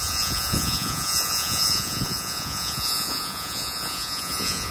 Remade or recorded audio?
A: remade